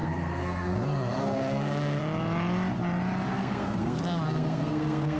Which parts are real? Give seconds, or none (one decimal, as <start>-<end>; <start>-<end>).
2.0-3.3